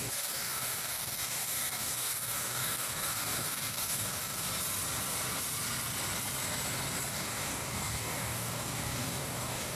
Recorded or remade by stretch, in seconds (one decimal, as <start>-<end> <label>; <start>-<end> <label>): 0.0-4.5 remade; 4.5-7.1 recorded; 7.1-9.8 remade